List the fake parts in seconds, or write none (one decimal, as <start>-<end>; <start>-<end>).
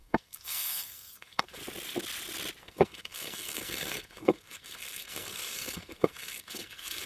0.0-1.6; 2.6-7.1